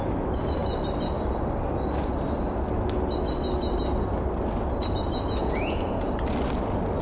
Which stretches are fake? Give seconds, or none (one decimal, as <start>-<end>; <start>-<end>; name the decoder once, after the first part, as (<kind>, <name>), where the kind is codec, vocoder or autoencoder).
5.4-6.1 (vocoder, Vocos)